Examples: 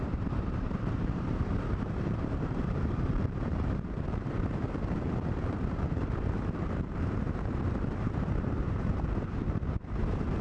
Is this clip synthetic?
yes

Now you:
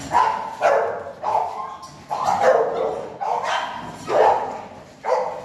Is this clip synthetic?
no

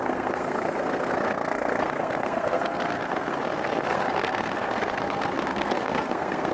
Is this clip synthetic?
yes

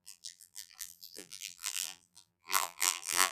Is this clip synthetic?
yes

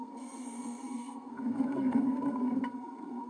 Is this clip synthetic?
yes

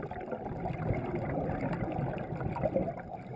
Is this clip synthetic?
no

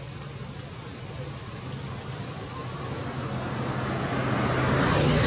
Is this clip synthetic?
no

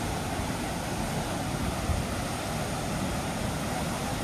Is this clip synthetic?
no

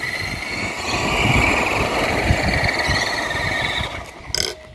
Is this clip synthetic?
no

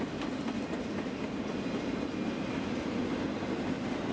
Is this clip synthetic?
no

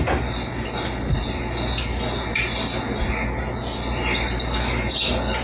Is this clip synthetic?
no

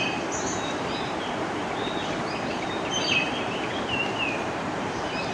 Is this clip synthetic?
yes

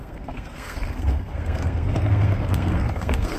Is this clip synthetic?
yes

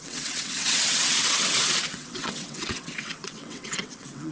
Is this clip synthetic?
yes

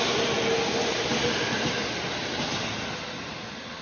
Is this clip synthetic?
no